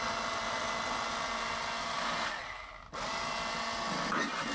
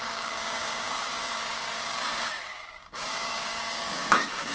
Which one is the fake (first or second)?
second